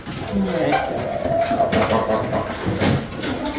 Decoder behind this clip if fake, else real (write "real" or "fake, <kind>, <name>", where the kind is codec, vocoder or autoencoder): real